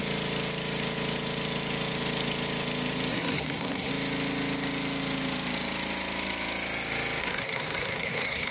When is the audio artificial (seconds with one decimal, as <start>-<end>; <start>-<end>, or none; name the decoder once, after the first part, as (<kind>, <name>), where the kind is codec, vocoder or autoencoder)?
3.1-3.9 (codec, SNAC); 7.2-8.5